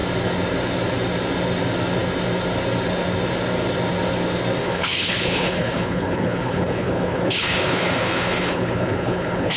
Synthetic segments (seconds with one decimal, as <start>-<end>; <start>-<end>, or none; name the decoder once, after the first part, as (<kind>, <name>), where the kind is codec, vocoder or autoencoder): 4.6-9.6 (codec, HILCodec)